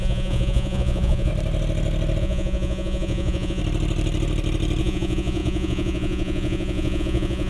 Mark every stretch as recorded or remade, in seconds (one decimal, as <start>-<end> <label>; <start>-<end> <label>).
0.0-1.3 remade; 1.3-2.2 recorded; 2.2-3.6 remade; 3.6-4.8 recorded; 4.8-7.5 remade

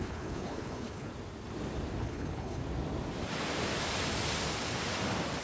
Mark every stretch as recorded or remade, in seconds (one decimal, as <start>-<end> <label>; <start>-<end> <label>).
0.0-1.1 remade; 1.1-2.0 recorded; 2.0-2.6 remade; 2.6-5.4 recorded

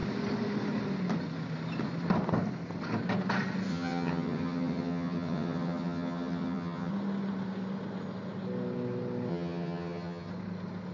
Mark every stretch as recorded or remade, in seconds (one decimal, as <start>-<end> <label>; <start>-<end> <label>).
0.0-3.7 recorded; 3.7-6.9 remade; 6.9-9.3 recorded; 9.3-10.3 remade; 10.3-10.9 recorded

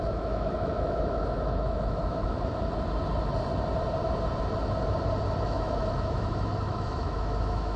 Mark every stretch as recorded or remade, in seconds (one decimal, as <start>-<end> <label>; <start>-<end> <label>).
0.0-2.2 remade; 2.2-5.4 recorded; 5.4-7.8 remade

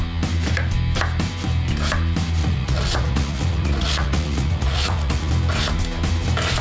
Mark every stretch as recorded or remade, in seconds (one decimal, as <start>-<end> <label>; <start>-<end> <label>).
0.0-2.4 recorded; 2.4-5.3 remade; 5.3-6.6 recorded

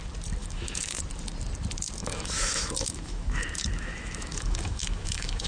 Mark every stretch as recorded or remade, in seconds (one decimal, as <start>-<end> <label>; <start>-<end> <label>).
0.0-0.4 recorded; 0.4-1.0 remade; 1.0-2.0 recorded; 2.0-5.5 remade

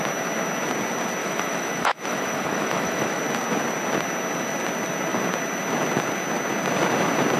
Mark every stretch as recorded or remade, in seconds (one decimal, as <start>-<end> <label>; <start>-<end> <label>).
0.0-1.2 recorded; 1.2-3.2 remade; 3.2-7.4 recorded